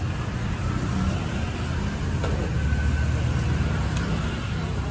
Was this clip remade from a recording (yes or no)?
no